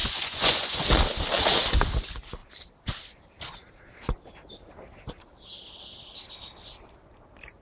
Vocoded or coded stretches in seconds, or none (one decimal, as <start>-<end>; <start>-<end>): 0.0-0.8